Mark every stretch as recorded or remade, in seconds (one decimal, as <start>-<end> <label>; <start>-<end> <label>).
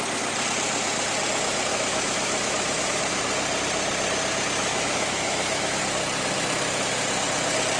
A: 0.0-1.7 recorded; 1.7-3.0 remade; 3.0-4.6 recorded; 4.6-5.8 remade; 5.8-7.8 recorded